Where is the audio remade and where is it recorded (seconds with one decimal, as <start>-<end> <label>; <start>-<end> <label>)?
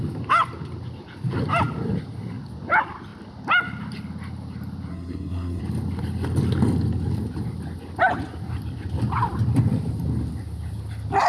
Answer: 0.0-4.9 recorded; 4.9-5.6 remade; 5.6-11.3 recorded